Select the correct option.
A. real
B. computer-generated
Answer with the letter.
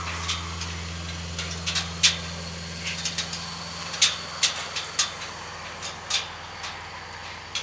A